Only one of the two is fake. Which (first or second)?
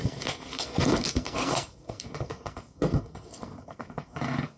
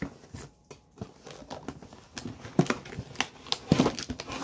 first